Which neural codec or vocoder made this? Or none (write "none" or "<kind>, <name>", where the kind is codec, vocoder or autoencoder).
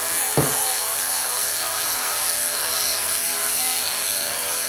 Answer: codec, SNAC